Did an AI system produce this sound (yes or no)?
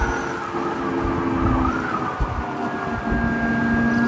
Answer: no